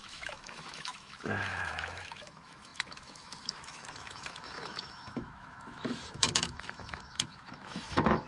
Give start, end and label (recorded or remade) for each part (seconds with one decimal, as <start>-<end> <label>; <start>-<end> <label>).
0.0-8.3 remade